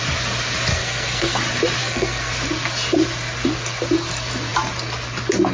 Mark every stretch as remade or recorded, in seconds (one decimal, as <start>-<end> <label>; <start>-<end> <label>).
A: 0.0-0.7 recorded; 0.7-1.4 remade; 1.4-1.8 recorded; 1.8-2.3 remade; 2.3-5.5 recorded